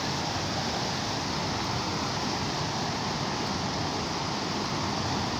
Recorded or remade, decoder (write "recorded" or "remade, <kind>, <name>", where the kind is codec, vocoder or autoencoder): recorded